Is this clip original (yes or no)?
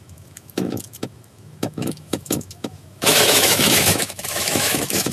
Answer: no